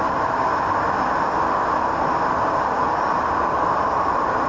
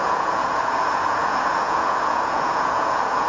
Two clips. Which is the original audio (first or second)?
first